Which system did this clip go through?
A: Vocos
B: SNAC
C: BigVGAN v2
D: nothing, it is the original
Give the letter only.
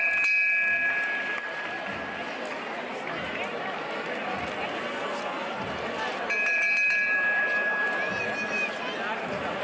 D